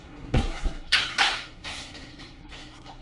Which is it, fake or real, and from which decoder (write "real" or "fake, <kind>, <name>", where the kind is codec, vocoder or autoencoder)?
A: fake, codec, SNAC